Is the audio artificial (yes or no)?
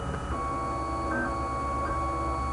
no